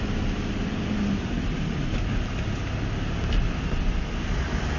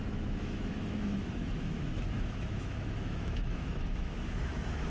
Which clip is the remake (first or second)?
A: second